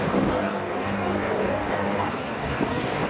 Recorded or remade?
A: remade